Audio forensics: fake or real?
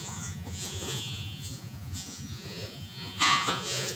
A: fake